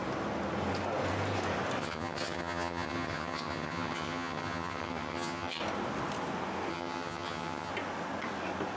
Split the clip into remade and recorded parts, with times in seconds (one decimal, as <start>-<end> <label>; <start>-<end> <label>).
0.0-1.8 recorded; 1.8-5.6 remade; 5.6-6.7 recorded; 6.7-7.7 remade; 7.7-8.8 recorded